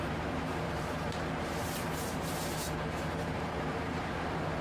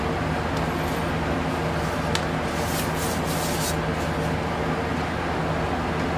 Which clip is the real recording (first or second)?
second